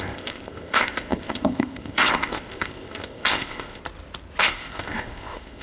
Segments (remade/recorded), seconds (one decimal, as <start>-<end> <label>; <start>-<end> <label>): 0.0-3.8 remade; 3.8-4.4 recorded; 4.4-5.6 remade